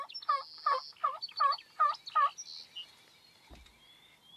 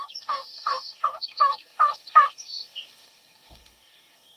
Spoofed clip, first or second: second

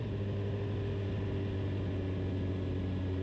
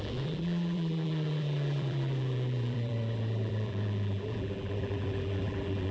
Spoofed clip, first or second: second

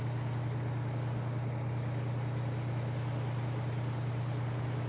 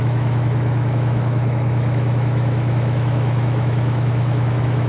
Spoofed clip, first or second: second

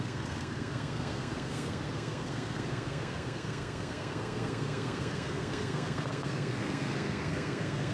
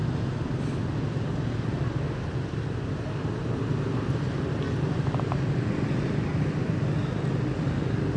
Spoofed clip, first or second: first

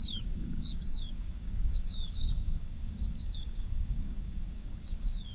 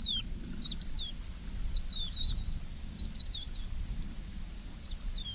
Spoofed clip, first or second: first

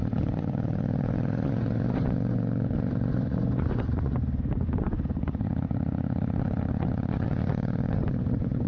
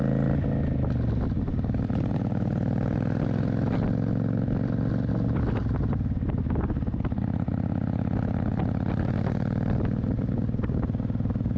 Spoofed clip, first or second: first